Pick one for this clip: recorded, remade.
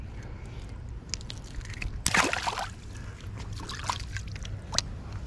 recorded